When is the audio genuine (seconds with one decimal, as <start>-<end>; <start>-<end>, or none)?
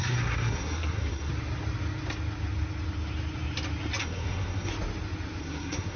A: 1.3-4.0; 4.7-5.4